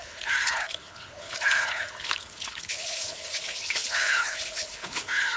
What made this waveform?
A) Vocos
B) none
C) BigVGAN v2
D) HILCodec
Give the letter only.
D